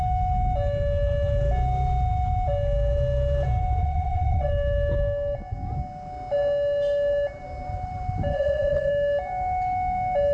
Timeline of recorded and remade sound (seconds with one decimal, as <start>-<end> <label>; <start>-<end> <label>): 0.0-3.8 recorded; 3.8-4.5 remade; 4.5-8.3 recorded; 8.3-8.9 remade; 8.9-10.3 recorded